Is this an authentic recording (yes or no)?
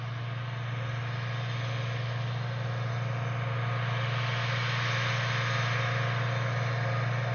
yes